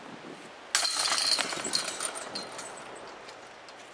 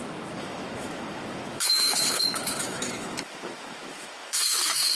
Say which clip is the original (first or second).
first